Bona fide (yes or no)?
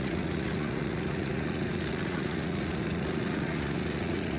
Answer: no